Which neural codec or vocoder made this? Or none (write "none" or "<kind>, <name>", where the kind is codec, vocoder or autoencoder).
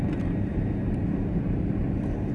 none